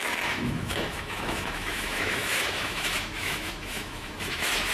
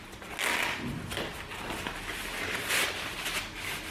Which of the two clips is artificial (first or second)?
first